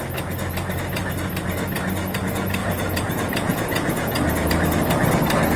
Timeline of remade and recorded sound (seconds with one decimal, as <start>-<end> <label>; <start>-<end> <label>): 0.0-2.6 recorded; 2.6-4.5 remade; 4.5-5.6 recorded